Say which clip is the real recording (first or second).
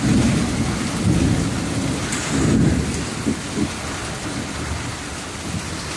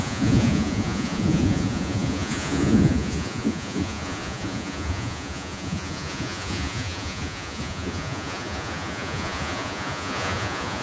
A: first